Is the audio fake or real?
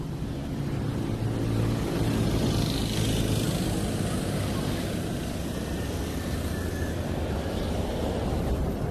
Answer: real